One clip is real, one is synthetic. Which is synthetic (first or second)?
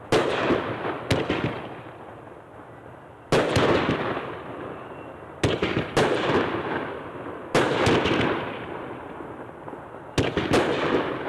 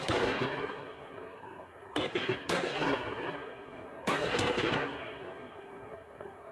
second